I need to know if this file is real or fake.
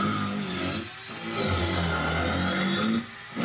real